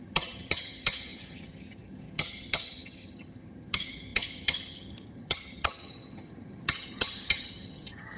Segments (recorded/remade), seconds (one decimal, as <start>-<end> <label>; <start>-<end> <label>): 0.0-8.2 remade